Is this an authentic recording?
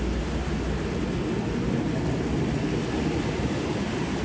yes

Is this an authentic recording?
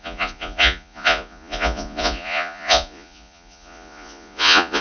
no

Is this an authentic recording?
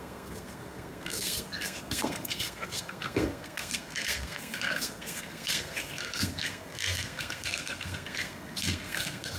no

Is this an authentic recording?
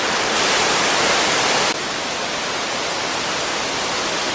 yes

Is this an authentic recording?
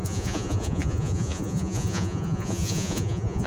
no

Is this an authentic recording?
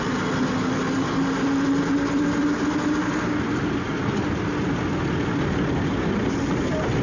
yes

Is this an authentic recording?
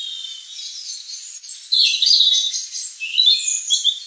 yes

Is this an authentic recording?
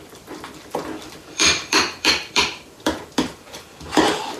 no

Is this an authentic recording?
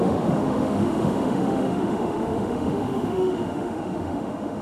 no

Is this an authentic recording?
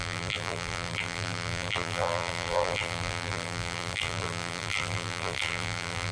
no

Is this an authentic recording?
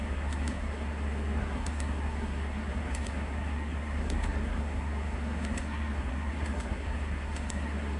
no